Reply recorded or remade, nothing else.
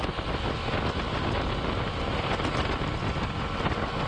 recorded